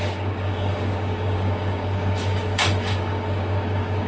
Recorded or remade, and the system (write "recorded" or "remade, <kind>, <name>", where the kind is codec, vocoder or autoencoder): remade, codec, DAC